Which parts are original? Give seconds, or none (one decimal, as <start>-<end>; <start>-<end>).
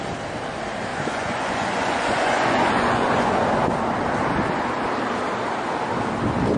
0.0-0.9; 3.4-6.6